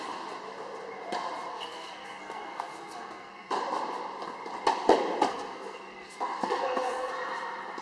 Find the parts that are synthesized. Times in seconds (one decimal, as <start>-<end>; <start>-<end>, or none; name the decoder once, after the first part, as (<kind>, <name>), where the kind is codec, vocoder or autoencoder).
1.5-3.5 (codec, SNAC); 5.3-7.1